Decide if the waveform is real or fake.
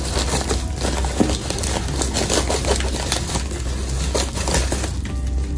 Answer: real